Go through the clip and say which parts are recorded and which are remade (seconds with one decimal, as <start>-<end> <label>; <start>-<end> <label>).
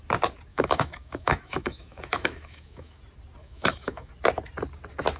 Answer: 0.0-0.5 recorded; 0.5-3.0 remade; 3.0-3.4 recorded; 3.4-4.1 remade; 4.1-5.2 recorded